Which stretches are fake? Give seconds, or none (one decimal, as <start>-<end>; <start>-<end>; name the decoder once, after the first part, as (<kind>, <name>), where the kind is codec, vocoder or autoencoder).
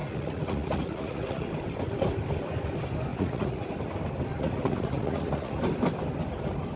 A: 0.0-1.5 (vocoder, Vocos); 3.1-3.7; 4.3-5.6